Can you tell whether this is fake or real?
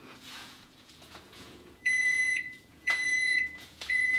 fake